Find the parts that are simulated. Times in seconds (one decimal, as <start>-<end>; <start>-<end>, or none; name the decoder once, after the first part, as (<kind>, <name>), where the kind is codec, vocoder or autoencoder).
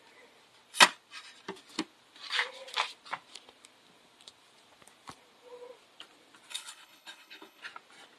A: 6.5-7.6 (codec, HILCodec)